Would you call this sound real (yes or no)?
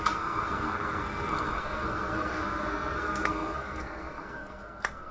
no